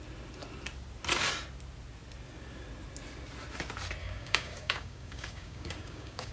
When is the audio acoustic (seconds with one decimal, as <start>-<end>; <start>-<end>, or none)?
0.0-4.0